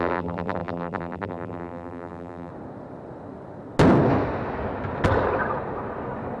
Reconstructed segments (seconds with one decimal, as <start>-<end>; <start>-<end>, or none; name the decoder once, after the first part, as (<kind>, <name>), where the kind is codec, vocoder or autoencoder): 0.0-2.5 (vocoder, BigVGAN v2)